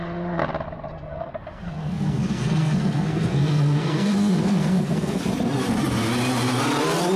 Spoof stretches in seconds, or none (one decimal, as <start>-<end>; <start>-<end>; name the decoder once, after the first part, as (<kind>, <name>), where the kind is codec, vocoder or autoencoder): 0.9-5.2 (codec, SNAC)

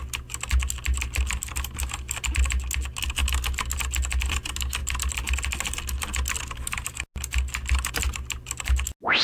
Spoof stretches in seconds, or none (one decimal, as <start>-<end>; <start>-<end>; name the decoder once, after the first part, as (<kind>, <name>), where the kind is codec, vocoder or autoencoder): none

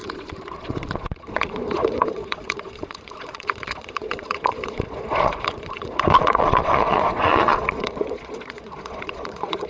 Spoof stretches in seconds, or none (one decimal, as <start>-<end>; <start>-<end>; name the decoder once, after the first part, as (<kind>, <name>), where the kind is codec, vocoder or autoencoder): 0.0-9.7 (vocoder, Vocos)

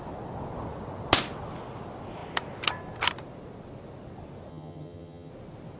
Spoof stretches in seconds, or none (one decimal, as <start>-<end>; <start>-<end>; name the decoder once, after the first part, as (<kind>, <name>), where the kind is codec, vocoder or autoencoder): 4.5-5.3 (vocoder, HiFi-GAN)